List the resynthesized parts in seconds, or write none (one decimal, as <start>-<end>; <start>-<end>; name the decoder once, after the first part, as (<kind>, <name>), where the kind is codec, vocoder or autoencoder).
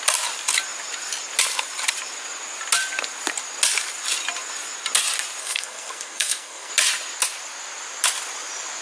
5.4-6.7 (codec, SNAC)